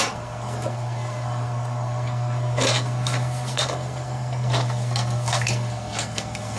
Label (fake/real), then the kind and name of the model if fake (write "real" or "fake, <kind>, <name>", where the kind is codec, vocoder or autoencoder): fake, codec, SNAC